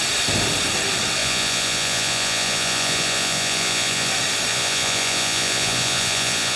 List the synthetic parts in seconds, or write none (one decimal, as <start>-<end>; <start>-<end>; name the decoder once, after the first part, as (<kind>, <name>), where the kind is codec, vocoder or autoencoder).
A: 1.2-4.1 (vocoder, Vocos); 4.5-6.6